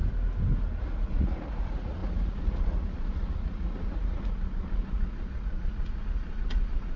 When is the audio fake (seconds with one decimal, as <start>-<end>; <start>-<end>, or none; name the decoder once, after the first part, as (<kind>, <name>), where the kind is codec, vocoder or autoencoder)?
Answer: 0.8-7.0 (vocoder, Vocos)